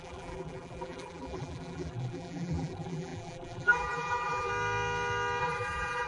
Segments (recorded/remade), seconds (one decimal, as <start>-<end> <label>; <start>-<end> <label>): 0.0-4.5 remade; 4.5-5.4 recorded; 5.4-6.1 remade